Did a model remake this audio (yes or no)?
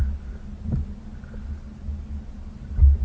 no